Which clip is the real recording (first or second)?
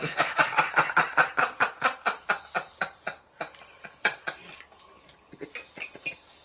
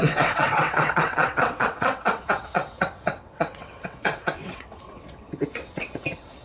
first